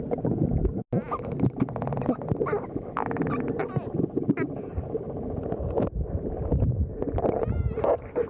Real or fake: real